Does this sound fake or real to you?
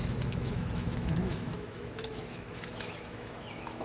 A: fake